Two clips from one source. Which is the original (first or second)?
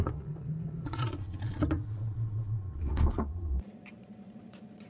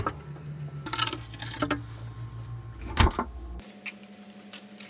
second